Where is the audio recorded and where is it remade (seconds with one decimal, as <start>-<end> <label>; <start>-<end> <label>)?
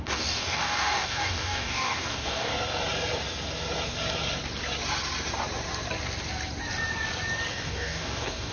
0.0-2.5 remade; 2.5-7.5 recorded; 7.5-8.5 remade